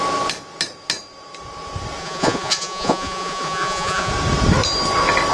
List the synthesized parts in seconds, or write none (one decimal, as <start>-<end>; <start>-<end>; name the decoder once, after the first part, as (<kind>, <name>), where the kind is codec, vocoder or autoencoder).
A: 2.0-4.1 (vocoder, Vocos)